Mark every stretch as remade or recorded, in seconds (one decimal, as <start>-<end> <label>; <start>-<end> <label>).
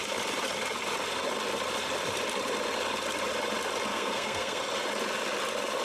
0.0-3.9 recorded; 3.9-4.6 remade; 4.6-5.8 recorded